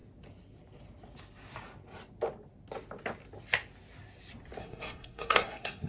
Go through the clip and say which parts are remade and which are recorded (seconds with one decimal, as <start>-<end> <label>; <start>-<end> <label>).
0.0-4.6 recorded; 4.6-5.9 remade